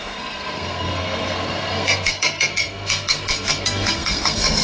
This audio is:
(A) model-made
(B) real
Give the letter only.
A